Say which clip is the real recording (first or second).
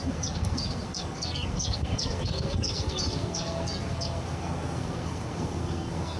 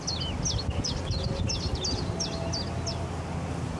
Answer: second